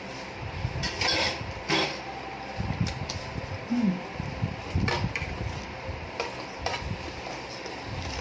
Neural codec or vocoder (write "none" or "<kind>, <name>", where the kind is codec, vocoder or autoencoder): vocoder, BigVGAN v2